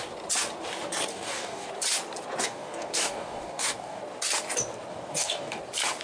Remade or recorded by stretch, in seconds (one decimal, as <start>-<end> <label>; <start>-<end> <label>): 0.0-1.1 recorded; 1.1-1.7 remade; 1.7-2.4 recorded; 2.4-4.0 remade; 4.0-4.9 recorded; 4.9-5.6 remade; 5.6-6.0 recorded